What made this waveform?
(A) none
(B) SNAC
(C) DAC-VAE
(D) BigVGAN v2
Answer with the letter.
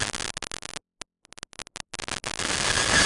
A